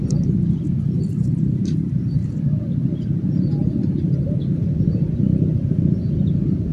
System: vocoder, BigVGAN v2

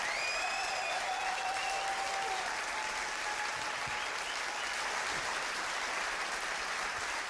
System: none